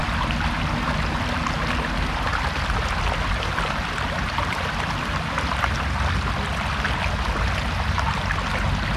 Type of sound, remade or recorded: recorded